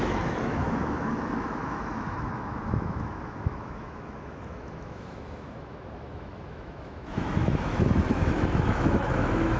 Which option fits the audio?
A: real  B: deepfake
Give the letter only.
B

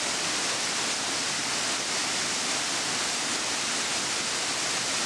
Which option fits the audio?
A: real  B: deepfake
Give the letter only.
A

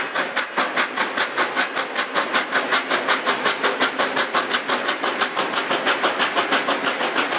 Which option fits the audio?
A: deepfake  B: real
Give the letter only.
B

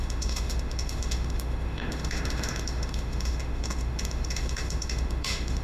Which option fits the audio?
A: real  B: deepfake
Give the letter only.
B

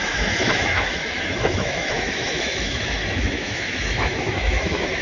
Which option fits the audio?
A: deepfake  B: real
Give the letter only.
A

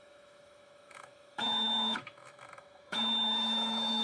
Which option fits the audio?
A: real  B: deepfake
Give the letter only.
B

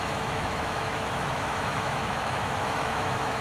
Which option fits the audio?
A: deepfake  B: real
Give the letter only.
A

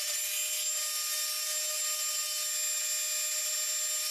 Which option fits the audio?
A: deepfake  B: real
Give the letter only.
B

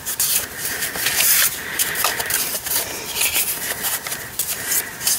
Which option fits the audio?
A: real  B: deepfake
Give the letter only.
A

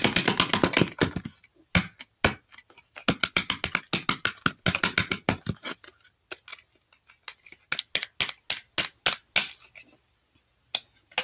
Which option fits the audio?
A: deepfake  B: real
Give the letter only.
B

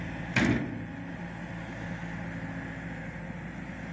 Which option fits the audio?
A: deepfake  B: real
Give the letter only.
B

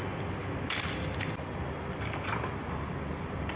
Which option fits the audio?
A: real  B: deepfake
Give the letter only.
A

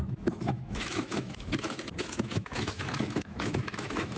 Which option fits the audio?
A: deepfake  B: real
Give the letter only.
A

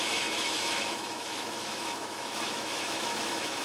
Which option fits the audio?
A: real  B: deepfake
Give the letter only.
B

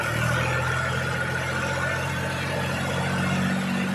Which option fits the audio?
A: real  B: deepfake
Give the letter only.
A